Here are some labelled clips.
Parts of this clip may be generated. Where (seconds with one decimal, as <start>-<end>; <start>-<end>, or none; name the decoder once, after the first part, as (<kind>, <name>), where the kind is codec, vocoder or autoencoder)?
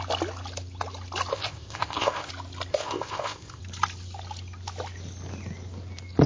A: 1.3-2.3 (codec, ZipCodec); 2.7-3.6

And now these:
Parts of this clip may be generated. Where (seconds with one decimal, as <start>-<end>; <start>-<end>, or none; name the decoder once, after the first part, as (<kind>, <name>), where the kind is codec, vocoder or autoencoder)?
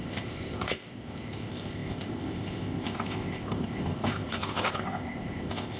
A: 0.0-5.8 (codec, ZipCodec)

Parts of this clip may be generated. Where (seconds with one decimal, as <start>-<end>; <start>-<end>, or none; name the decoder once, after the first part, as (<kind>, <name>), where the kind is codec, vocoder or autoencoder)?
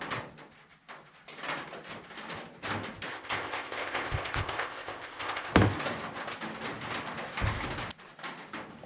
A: 3.1-5.5 (codec, ZipCodec)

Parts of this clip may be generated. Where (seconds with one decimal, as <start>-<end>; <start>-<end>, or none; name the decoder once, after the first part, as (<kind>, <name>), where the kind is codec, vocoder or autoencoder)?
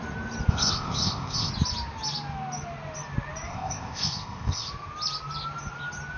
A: 0.5-1.5 (codec, ZipCodec); 3.5-4.7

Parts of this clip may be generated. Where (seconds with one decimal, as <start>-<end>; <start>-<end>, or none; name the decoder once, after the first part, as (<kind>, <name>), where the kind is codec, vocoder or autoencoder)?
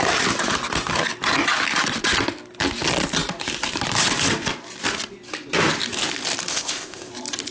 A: 6.5-7.1 (codec, ZipCodec)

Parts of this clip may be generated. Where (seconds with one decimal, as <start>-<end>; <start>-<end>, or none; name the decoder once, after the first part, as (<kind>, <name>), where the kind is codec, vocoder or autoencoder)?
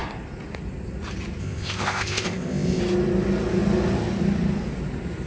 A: 1.4-2.8 (codec, ZipCodec)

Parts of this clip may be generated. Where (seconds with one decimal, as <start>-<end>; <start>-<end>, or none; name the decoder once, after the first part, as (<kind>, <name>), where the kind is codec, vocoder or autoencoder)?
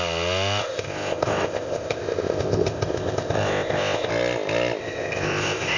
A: 0.6-4.1 (codec, ZipCodec); 4.8-5.8